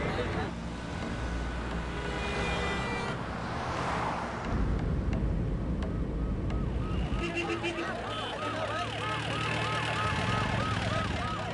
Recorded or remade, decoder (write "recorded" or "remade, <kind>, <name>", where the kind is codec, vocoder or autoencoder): recorded